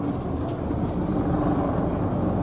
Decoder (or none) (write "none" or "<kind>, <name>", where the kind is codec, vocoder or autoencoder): none